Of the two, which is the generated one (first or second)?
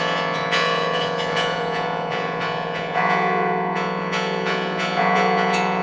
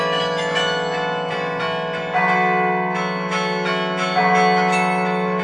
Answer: first